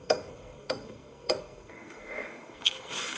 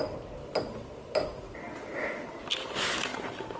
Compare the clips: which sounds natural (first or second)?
second